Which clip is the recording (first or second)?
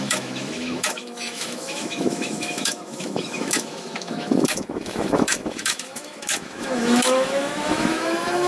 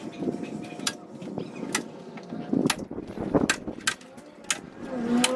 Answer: second